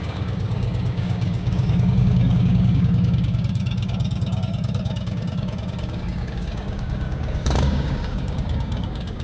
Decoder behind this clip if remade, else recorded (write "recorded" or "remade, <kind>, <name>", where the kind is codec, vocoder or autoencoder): remade, codec, DAC